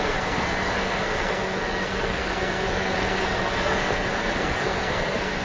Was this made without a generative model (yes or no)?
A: no